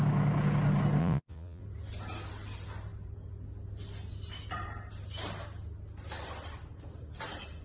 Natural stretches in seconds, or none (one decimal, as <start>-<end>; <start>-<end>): 0.0-1.0; 1.6-7.6